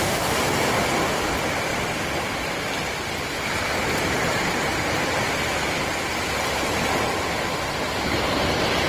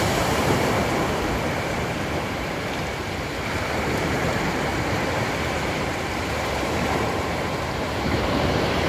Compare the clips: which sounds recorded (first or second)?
first